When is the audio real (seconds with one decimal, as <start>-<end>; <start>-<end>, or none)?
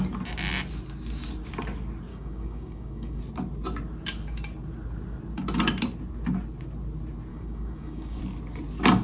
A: 0.0-2.1; 3.2-7.3; 8.2-9.0